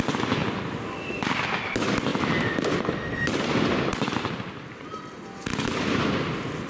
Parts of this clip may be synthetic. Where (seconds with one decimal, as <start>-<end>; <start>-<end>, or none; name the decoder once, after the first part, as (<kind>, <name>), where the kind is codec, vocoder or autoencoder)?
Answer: none